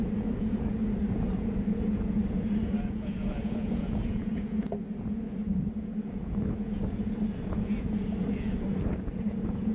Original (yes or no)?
no